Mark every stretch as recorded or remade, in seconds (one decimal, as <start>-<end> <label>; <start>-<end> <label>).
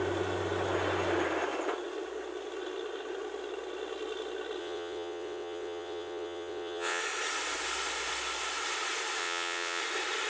0.0-4.6 recorded; 4.6-7.0 remade; 7.0-9.2 recorded; 9.2-9.8 remade; 9.8-10.3 recorded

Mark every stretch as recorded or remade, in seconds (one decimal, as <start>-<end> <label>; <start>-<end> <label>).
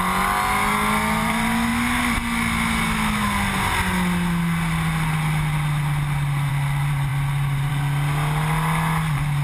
0.0-9.4 recorded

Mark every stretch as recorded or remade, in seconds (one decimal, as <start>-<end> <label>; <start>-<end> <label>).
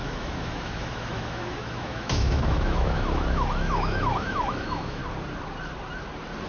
0.0-5.0 remade; 5.0-6.5 recorded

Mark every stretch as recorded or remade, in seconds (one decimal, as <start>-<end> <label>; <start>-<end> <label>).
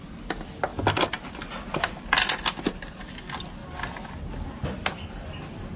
0.0-5.8 recorded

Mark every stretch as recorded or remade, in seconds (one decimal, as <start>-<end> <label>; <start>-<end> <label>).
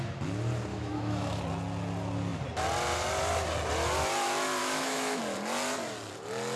0.0-0.7 recorded; 0.7-1.4 remade; 1.4-4.6 recorded; 4.6-5.2 remade; 5.2-6.6 recorded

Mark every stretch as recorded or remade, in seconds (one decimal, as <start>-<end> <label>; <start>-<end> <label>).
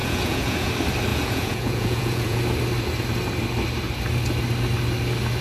0.0-0.7 remade; 0.7-1.1 recorded; 1.1-2.4 remade; 2.4-5.4 recorded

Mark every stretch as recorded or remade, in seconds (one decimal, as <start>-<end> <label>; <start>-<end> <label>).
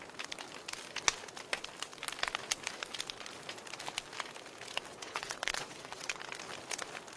0.0-4.9 recorded; 4.9-6.2 remade; 6.2-7.2 recorded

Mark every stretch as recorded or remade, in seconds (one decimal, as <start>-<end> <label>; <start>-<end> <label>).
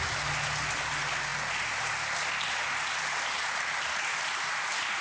0.0-5.0 recorded